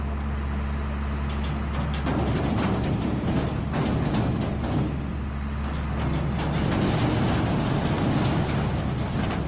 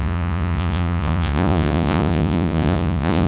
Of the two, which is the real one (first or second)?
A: first